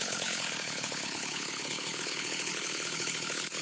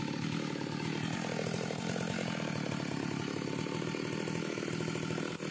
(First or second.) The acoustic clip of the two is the second